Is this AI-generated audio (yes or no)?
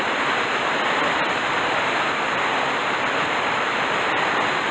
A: no